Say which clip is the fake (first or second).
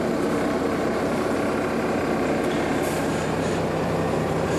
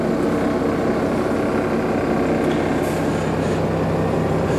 first